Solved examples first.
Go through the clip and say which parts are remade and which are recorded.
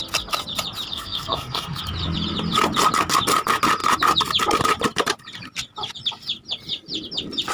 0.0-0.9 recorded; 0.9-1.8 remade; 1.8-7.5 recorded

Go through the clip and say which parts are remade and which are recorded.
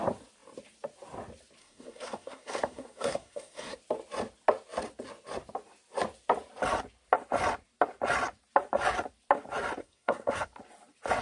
0.0-1.6 recorded; 1.6-3.8 remade; 3.8-9.8 recorded; 9.8-10.5 remade; 10.5-11.2 recorded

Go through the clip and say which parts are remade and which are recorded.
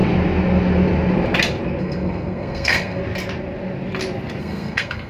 0.0-1.8 recorded; 1.8-3.0 remade; 3.0-4.4 recorded; 4.4-5.1 remade